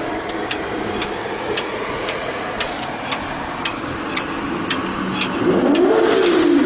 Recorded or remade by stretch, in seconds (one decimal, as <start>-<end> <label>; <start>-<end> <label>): 0.0-1.2 recorded; 1.2-2.4 remade; 2.4-6.7 recorded